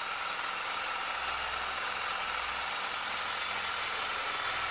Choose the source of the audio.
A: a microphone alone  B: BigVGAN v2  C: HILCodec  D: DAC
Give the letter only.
A